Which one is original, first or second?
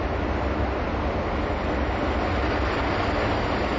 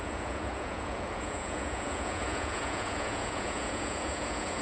first